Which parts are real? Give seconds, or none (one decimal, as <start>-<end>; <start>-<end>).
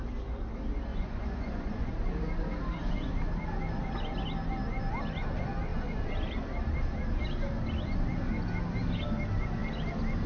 0.0-0.9; 1.9-10.3